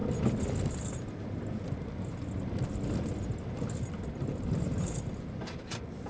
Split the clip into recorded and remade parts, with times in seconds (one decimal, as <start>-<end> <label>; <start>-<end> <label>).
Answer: 0.0-3.7 remade; 3.7-6.1 recorded